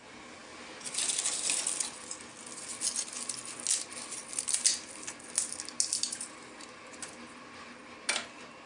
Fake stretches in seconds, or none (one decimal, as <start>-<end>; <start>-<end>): none